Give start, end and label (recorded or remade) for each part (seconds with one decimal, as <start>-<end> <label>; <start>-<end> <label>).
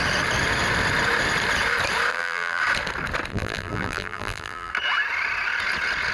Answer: 0.0-2.1 recorded; 2.1-2.6 remade; 2.6-3.3 recorded; 3.3-4.7 remade; 4.7-6.1 recorded